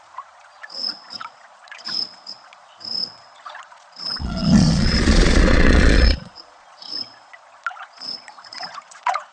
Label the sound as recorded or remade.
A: remade